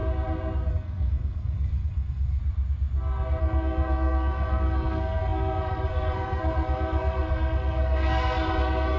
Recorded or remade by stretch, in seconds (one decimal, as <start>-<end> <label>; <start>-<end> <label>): 0.0-0.7 recorded; 0.7-2.4 remade; 2.4-3.4 recorded; 3.4-9.0 remade